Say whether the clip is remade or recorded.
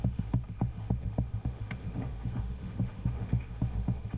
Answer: remade